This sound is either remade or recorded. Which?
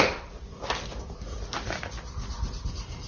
recorded